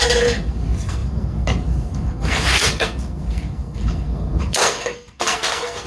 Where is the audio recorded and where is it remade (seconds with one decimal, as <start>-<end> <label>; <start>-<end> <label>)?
0.0-5.9 remade